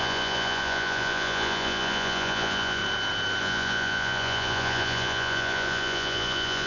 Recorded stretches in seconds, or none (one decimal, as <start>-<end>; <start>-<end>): 2.8-3.4